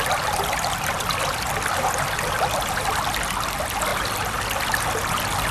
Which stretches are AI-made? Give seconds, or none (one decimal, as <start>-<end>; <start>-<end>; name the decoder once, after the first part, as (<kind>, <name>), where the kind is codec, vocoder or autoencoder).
none